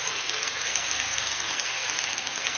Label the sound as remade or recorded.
remade